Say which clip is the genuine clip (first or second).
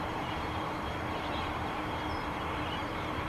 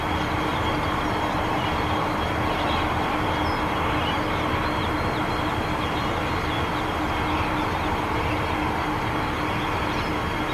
second